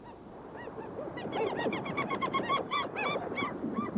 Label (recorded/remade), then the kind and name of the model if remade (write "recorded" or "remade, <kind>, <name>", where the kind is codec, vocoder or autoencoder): remade, vocoder, BigVGAN v2